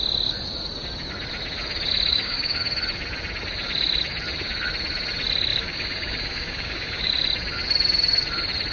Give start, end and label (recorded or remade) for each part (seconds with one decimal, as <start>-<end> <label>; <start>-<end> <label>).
0.0-2.1 recorded; 2.1-2.6 remade; 2.6-5.5 recorded; 5.5-7.1 remade; 7.1-8.7 recorded